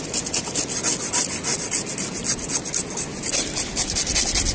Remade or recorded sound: recorded